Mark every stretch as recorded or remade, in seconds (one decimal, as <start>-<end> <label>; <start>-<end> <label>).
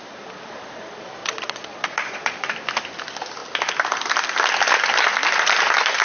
0.0-1.2 recorded; 1.2-2.5 remade; 2.5-6.0 recorded